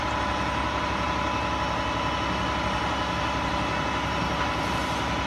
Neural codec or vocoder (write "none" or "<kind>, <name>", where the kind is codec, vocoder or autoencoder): none